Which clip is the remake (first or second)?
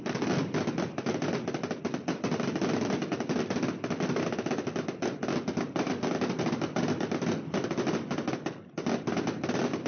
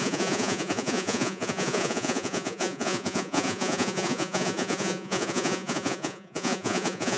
second